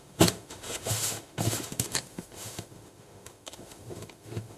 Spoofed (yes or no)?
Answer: yes